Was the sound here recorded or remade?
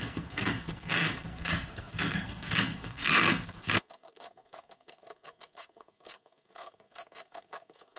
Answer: remade